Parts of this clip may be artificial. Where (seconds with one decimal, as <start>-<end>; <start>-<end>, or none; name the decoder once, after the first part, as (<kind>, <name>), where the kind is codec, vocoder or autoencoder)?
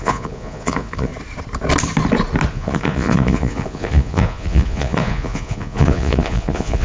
0.0-1.1 (vocoder, Vocos); 2.5-6.8